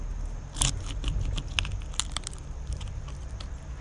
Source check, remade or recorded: recorded